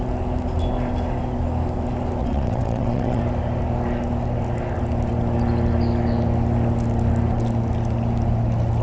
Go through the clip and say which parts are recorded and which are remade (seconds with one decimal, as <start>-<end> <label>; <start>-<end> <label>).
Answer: 0.0-2.2 recorded; 2.2-3.2 remade; 3.2-8.8 recorded